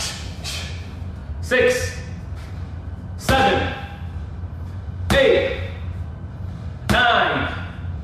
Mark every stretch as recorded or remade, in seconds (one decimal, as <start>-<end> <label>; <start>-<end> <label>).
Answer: 0.0-8.0 recorded